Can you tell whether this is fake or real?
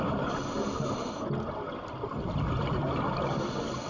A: real